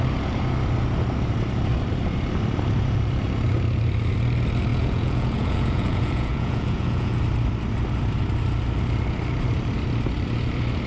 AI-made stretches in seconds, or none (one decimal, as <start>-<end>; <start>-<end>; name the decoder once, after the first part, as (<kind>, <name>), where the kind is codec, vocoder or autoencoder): 4.7-7.2 (vocoder, Vocos)